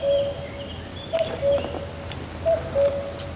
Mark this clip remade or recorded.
recorded